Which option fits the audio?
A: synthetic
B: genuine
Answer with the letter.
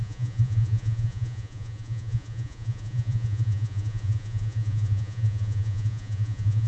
A